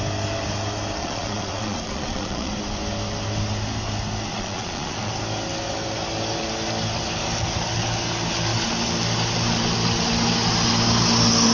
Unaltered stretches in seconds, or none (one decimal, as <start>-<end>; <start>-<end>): 0.0-1.0; 2.5-4.3; 5.1-11.5